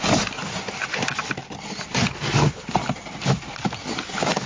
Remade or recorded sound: recorded